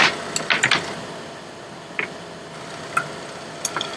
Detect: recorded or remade recorded